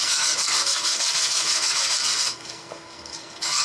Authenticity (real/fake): fake